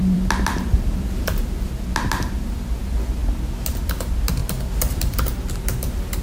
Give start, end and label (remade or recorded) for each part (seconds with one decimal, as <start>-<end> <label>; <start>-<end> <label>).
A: 0.0-2.8 remade; 2.8-4.4 recorded; 4.4-5.5 remade; 5.5-6.2 recorded